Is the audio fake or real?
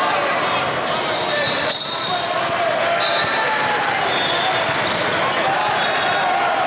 real